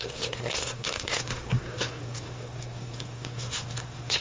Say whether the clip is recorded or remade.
remade